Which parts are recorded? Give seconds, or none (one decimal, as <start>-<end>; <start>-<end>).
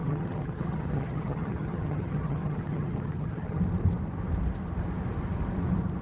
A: 3.6-6.0